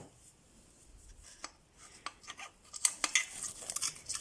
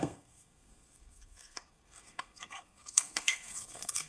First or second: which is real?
first